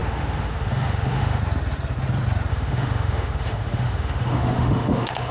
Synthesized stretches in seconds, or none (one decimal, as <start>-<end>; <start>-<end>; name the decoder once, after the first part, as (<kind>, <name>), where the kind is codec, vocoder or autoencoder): 0.0-1.4 (autoencoder, DAC-VAE); 2.5-5.3